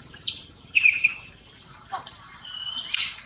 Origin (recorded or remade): remade